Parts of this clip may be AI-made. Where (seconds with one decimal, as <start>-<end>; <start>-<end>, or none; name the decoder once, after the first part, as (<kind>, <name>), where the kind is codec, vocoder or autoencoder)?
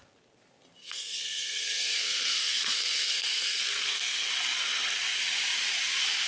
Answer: 0.8-4.3 (codec, SNAC)